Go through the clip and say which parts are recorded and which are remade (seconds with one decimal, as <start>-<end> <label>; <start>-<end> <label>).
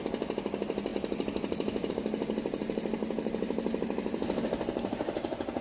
0.0-5.6 recorded